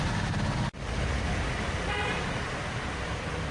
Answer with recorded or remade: recorded